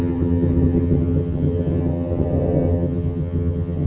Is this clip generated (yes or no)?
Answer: yes